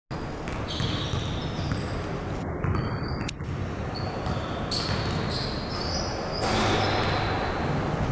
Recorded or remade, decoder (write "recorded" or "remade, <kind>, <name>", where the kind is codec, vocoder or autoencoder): recorded